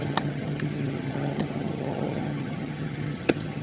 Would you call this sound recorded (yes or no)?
no